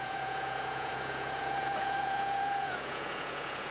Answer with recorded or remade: remade